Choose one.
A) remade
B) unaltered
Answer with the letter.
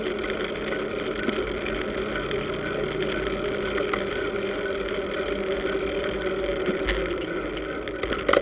B